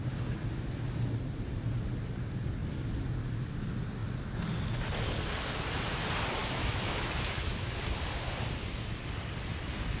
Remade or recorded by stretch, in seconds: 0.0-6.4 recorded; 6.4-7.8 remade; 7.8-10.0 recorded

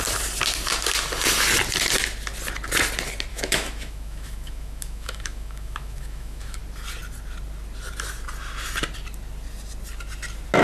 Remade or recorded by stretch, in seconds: 0.0-3.3 recorded; 3.3-6.6 remade; 6.6-10.6 recorded

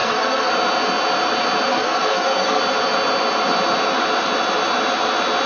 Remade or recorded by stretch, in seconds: 0.0-0.5 remade; 0.5-1.7 recorded; 1.7-2.6 remade; 2.6-5.5 recorded

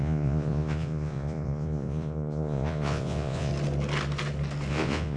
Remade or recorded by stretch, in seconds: 0.0-3.5 remade; 3.5-4.7 recorded; 4.7-5.2 remade

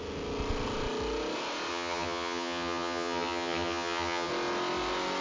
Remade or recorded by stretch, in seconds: 0.0-1.7 recorded; 1.7-4.3 remade; 4.3-5.2 recorded

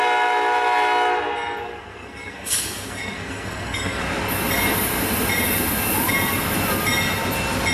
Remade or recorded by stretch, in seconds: 0.0-1.7 recorded; 1.7-4.0 remade; 4.0-7.7 recorded

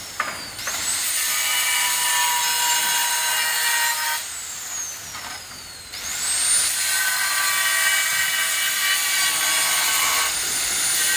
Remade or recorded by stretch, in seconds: 0.0-2.1 remade; 2.1-11.2 recorded